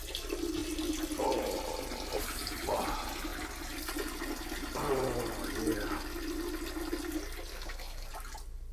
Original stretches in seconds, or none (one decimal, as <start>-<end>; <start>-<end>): 0.0-7.5; 8.1-8.7